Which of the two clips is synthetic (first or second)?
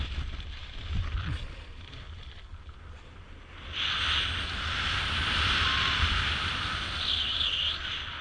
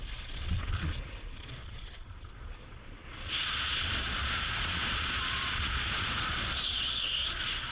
second